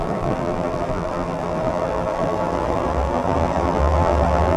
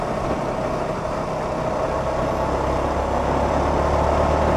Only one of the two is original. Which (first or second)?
second